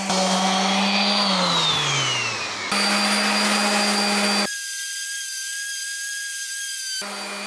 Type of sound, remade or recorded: recorded